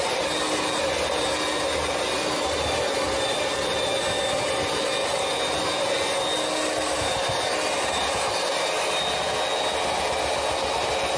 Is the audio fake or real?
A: real